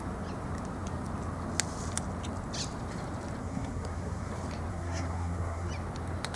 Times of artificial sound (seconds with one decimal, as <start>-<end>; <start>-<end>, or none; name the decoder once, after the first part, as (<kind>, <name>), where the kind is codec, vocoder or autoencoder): 3.4-4.3 (codec, SNAC); 4.7-5.7